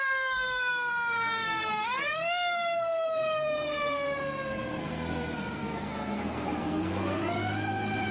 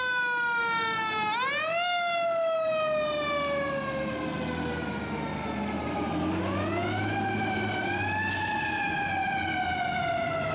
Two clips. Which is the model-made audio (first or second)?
first